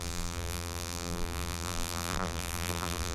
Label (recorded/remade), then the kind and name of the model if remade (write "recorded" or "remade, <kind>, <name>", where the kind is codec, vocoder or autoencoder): remade, vocoder, BigVGAN v2